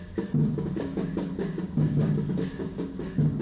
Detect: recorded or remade remade